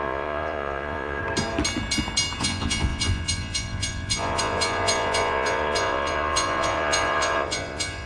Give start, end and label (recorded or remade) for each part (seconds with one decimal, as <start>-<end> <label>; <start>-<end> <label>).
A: 0.0-1.2 remade; 1.2-2.4 recorded; 2.4-8.1 remade